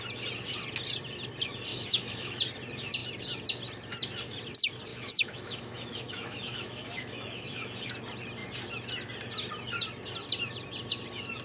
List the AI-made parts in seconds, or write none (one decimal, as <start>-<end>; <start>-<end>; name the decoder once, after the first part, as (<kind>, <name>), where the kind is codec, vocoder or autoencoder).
1.7-2.4 (autoencoder, DAC-VAE); 4.9-7.9